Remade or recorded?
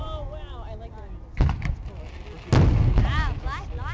recorded